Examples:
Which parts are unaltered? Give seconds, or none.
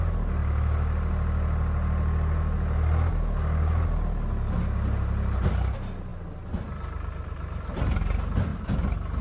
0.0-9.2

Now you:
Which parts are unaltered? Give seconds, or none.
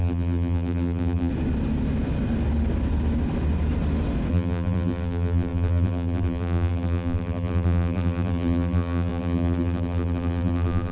1.3-4.3